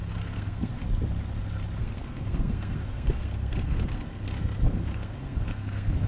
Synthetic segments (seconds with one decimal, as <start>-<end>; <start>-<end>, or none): 0.0-0.7; 1.8-6.1